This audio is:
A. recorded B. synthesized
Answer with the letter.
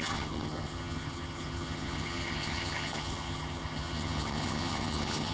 B